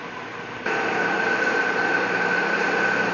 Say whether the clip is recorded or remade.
recorded